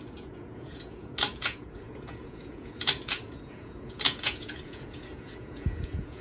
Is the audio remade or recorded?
remade